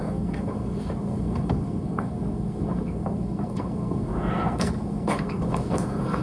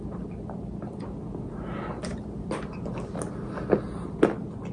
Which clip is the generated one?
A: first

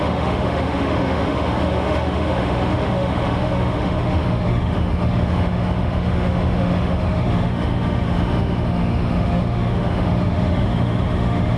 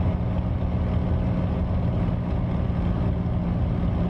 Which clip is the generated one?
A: first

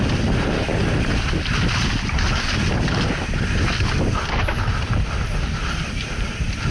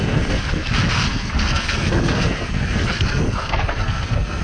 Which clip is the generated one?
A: second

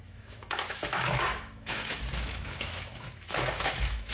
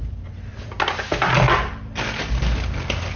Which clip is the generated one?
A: first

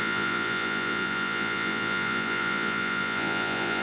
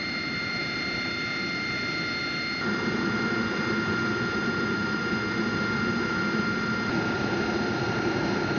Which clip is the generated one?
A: first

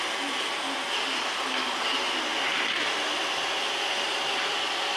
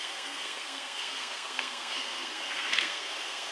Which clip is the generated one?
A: second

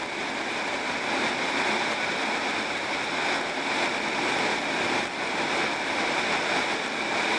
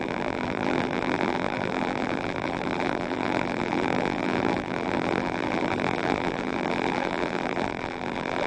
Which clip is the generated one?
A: second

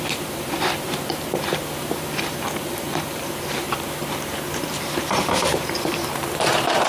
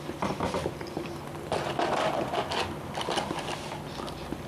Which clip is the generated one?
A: first